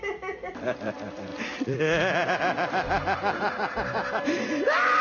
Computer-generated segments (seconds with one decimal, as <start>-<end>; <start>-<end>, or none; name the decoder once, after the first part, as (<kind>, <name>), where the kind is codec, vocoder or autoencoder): 0.0-5.0 (vocoder, BigVGAN v2)